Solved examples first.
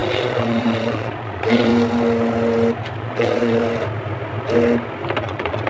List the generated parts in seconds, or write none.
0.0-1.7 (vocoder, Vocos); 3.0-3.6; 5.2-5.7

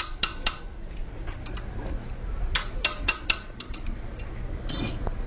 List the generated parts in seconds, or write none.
none